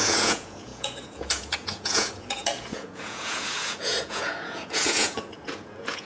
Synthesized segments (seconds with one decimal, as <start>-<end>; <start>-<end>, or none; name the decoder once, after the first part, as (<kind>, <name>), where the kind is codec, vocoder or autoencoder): 0.0-6.1 (vocoder, Vocos)